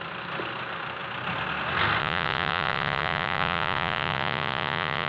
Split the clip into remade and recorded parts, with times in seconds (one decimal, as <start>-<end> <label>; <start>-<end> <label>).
0.0-2.0 recorded; 2.0-5.1 remade